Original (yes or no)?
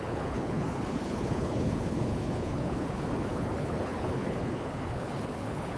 no